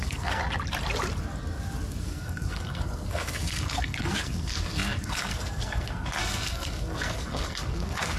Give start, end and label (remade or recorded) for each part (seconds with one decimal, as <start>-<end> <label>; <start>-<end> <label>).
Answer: 0.0-0.4 remade; 0.4-2.0 recorded; 2.0-8.2 remade